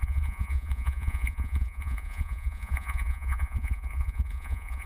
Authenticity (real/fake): fake